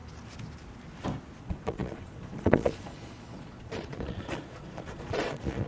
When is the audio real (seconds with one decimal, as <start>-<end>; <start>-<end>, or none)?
0.0-1.4